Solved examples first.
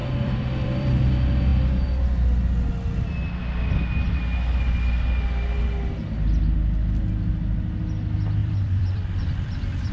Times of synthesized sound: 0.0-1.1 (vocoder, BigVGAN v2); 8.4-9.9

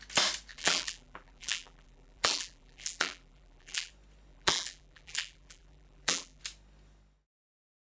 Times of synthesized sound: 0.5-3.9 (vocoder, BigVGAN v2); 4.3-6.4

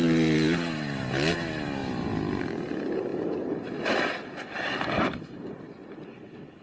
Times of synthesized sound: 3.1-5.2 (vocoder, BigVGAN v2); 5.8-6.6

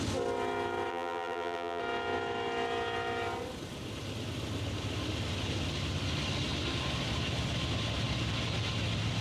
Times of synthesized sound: 0.9-1.8 (vocoder, BigVGAN v2)

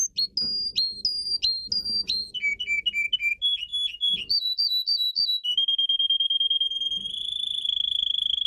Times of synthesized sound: 3.7-5.3 (vocoder, BigVGAN v2)